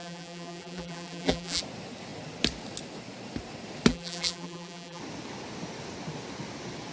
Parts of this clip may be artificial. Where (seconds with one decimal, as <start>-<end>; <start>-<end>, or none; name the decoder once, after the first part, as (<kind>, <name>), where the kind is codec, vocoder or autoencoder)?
0.0-1.6 (vocoder, BigVGAN v2); 3.9-5.0